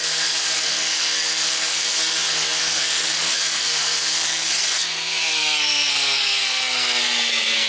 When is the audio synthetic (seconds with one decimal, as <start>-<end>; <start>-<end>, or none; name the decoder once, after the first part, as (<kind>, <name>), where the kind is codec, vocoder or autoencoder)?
0.0-7.7 (codec, SNAC)